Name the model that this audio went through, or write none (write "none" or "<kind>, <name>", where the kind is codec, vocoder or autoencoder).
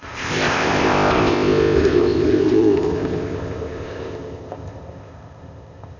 codec, ZipCodec